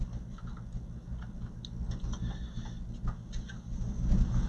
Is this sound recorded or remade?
recorded